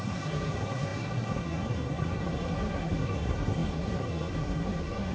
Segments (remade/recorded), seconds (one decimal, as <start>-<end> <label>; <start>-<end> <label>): 0.0-5.1 remade